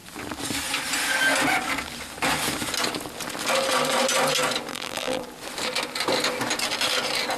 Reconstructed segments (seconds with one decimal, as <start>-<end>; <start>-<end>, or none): 4.7-5.2